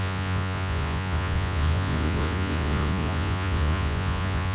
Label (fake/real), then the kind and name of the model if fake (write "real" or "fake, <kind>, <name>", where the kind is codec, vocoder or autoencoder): fake, vocoder, Vocos